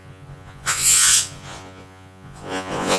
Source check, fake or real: fake